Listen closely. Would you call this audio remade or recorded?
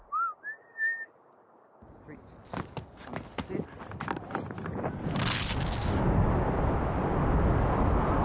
recorded